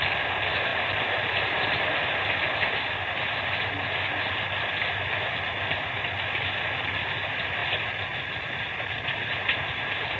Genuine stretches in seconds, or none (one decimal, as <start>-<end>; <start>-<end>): 0.0-10.2